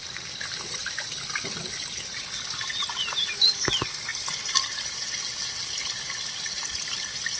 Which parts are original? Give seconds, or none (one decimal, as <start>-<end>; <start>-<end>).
0.0-7.4